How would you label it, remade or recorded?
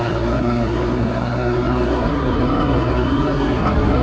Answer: remade